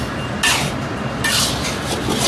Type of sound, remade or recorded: recorded